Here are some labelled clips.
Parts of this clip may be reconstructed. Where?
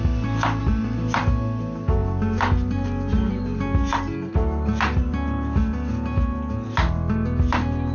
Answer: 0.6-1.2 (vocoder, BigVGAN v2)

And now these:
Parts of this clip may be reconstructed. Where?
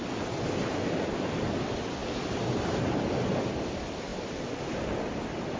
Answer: none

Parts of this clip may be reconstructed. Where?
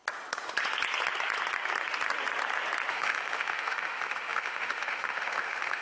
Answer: 2.9-5.8 (autoencoder, DAC-VAE)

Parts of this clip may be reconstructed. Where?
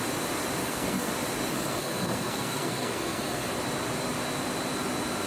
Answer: 0.6-1.1 (codec, SNAC); 1.5-3.5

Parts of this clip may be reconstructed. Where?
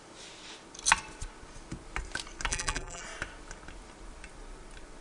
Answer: 2.5-3.0 (vocoder, BigVGAN v2)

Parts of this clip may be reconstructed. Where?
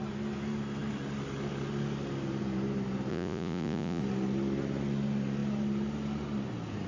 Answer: 3.1-4.0 (vocoder, Vocos)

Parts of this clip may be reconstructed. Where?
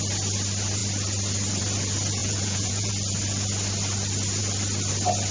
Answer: 2.2-2.9 (vocoder, Vocos)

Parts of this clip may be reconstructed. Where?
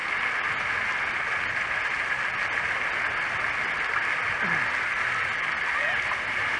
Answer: none